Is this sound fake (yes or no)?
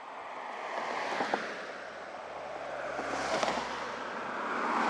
no